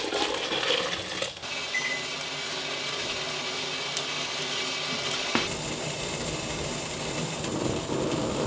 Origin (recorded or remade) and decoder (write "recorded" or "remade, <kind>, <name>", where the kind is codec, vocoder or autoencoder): recorded